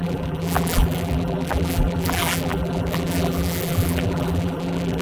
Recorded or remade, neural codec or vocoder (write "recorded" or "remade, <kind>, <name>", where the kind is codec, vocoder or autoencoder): remade, vocoder, BigVGAN v2